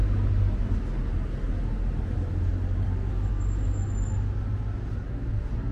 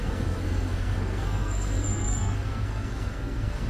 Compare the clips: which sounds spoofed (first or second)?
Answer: second